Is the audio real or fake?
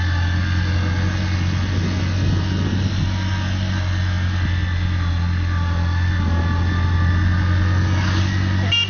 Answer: real